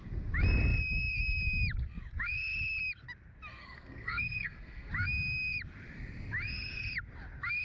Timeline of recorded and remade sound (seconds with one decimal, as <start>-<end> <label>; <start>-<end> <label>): 0.0-3.6 recorded; 3.6-4.9 remade; 4.9-7.6 recorded